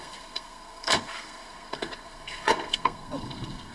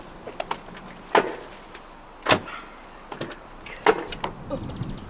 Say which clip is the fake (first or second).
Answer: first